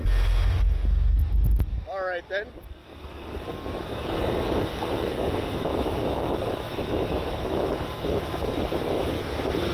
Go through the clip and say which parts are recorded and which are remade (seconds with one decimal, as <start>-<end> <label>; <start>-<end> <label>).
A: 0.0-5.7 recorded; 5.7-7.7 remade; 7.7-9.7 recorded